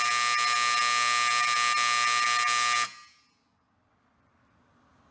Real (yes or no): yes